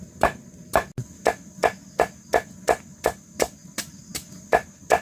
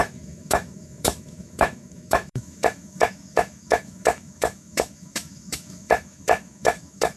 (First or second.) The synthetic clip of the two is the second